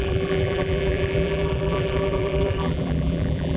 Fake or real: fake